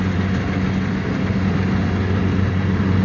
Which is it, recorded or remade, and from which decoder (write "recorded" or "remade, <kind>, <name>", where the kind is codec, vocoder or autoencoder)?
recorded